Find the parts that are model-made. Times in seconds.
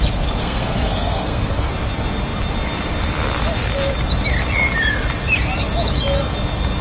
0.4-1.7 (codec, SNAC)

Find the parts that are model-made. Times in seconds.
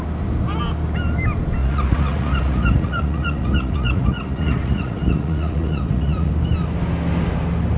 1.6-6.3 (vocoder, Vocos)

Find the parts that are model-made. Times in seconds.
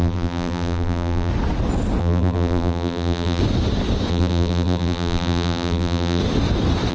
0.0-1.3 (vocoder, BigVGAN v2); 2.0-3.4; 4.1-6.2